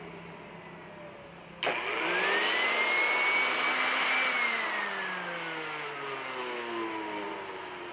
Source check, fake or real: real